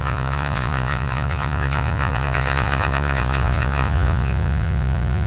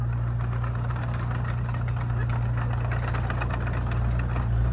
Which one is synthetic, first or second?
first